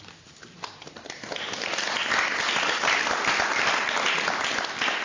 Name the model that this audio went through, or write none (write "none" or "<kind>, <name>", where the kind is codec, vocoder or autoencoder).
none